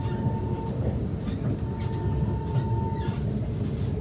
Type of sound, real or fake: real